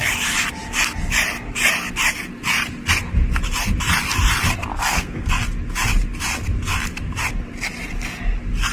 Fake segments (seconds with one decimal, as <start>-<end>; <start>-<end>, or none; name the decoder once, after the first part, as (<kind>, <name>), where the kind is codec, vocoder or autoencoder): 4.7-5.3 (codec, SNAC)